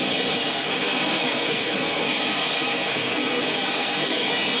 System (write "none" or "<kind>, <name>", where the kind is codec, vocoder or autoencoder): codec, SNAC